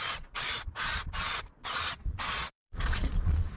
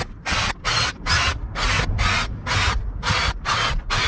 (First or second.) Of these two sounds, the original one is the second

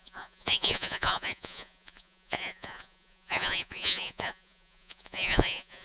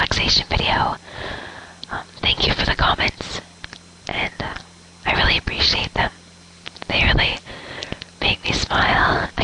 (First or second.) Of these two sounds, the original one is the second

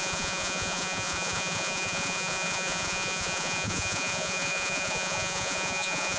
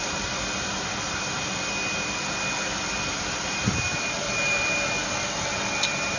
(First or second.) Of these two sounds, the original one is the second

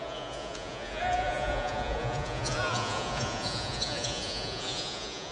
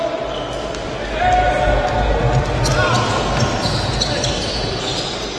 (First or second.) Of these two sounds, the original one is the second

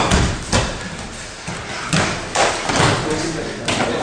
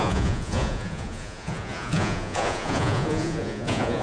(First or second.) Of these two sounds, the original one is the first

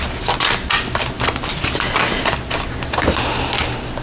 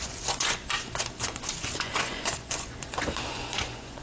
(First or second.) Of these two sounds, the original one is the first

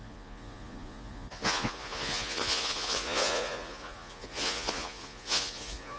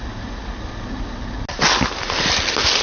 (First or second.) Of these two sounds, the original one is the second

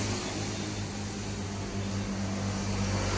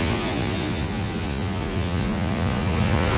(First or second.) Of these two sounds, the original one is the first